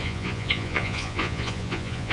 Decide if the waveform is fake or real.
fake